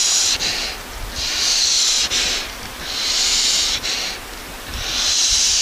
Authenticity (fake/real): real